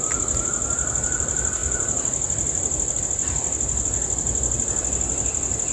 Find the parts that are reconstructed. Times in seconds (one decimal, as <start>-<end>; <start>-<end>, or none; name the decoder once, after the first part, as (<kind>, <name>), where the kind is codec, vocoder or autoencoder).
none